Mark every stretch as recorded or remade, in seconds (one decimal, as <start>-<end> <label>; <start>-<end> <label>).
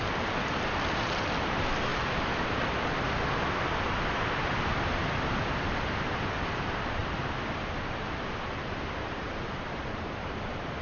0.0-1.9 remade; 1.9-3.4 recorded; 3.4-7.0 remade; 7.0-7.5 recorded; 7.5-10.8 remade